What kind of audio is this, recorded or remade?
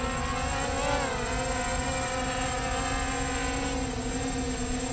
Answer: recorded